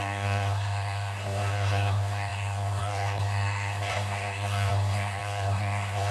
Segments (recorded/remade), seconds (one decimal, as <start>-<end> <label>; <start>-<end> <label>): 0.0-6.1 remade